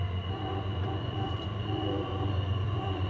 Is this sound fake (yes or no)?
yes